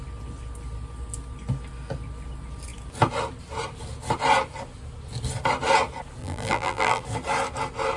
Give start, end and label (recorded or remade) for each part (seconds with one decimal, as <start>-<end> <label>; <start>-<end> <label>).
0.0-6.2 recorded; 6.2-7.0 remade; 7.0-8.0 recorded

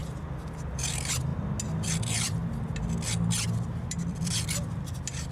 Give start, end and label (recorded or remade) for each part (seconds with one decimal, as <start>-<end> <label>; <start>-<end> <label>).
0.0-0.9 recorded; 0.9-1.3 remade; 1.3-2.0 recorded; 2.0-2.4 remade; 2.4-3.9 recorded; 3.9-5.3 remade

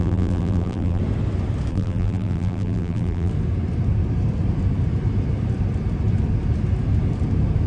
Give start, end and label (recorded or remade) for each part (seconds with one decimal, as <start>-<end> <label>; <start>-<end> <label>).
0.0-1.0 remade; 1.0-1.7 recorded; 1.7-3.3 remade; 3.3-7.7 recorded

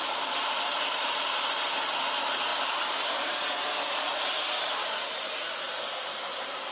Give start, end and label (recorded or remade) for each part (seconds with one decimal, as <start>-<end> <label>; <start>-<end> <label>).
0.0-1.4 remade; 1.4-2.5 recorded; 2.5-6.7 remade